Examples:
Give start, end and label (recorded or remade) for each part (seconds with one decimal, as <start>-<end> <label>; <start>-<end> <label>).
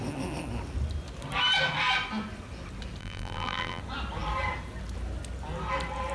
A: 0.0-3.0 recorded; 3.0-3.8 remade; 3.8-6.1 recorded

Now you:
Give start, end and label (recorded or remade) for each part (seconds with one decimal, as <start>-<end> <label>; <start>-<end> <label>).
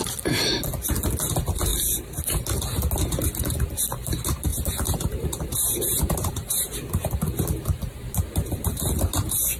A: 0.0-4.5 recorded; 4.5-6.3 remade; 6.3-9.6 recorded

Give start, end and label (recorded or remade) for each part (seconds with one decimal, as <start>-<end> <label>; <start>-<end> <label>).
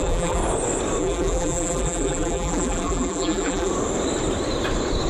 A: 0.0-0.4 remade; 0.4-1.0 recorded; 1.0-3.7 remade; 3.7-5.1 recorded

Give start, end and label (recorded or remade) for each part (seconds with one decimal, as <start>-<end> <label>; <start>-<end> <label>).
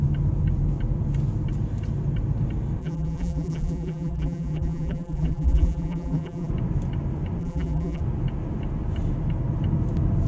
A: 0.0-2.8 recorded; 2.8-6.5 remade; 6.5-7.4 recorded; 7.4-8.0 remade; 8.0-10.3 recorded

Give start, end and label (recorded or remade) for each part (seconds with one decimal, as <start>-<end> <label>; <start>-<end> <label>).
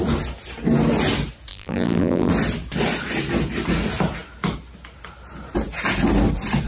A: 0.0-1.5 recorded; 1.5-2.3 remade; 2.3-6.7 recorded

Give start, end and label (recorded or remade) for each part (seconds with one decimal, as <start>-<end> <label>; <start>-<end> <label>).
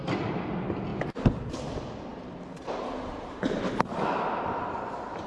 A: 0.0-2.1 recorded; 2.1-5.3 remade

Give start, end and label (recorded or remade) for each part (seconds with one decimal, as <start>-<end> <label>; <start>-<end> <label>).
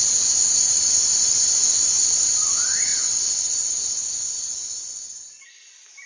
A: 0.0-6.1 remade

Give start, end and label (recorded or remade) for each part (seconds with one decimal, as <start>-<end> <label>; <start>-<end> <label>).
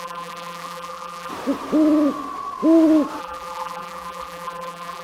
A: 0.0-1.3 remade; 1.3-3.2 recorded; 3.2-5.0 remade